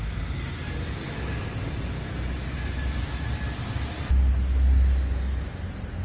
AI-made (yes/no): no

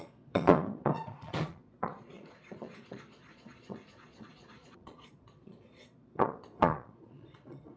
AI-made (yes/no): yes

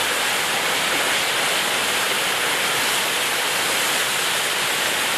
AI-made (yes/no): no